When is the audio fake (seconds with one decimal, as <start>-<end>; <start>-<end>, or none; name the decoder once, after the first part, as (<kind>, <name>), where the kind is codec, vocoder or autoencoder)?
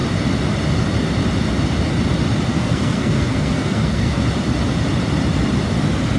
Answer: 2.5-4.2 (codec, SNAC)